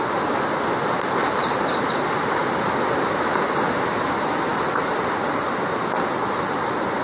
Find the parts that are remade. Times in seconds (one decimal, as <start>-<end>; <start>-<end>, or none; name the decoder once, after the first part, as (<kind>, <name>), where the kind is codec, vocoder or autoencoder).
none